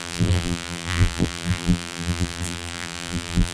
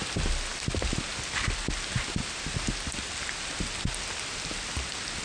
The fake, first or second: first